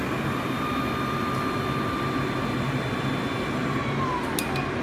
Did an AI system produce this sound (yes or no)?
no